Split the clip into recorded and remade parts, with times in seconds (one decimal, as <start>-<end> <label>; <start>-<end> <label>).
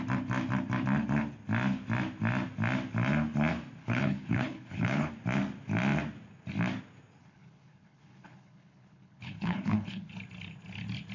0.0-3.8 recorded; 3.8-5.1 remade; 5.1-7.2 recorded; 7.2-10.1 remade; 10.1-11.1 recorded